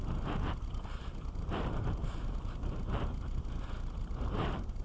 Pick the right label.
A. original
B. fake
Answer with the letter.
A